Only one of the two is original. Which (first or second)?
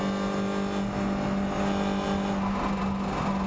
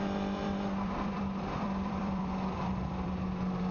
first